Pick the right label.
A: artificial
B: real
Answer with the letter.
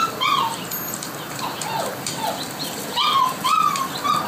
A